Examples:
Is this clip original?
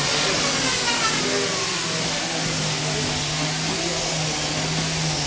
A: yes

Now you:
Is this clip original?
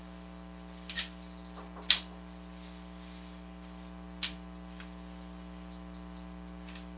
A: yes